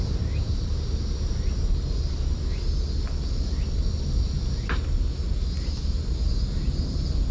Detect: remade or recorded recorded